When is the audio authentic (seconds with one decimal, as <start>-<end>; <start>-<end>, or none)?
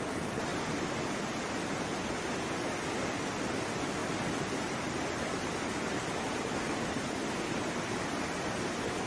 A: 0.0-9.1